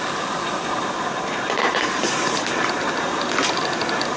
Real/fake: real